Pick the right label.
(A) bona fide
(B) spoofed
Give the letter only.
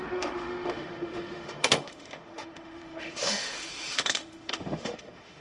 B